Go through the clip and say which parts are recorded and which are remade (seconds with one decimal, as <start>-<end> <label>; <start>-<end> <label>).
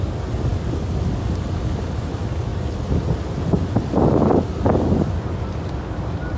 0.0-6.4 recorded